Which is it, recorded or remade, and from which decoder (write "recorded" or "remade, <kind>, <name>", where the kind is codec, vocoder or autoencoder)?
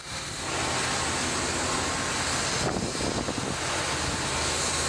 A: recorded